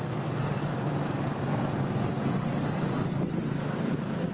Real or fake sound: real